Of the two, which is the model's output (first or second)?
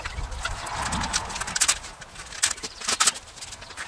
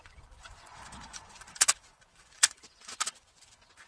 second